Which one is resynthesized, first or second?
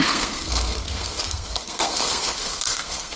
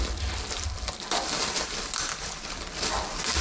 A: first